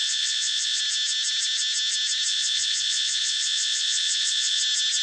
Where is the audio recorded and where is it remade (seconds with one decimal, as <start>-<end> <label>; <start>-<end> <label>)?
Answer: 0.0-0.8 remade; 0.8-2.3 recorded; 2.3-4.6 remade; 4.6-5.0 recorded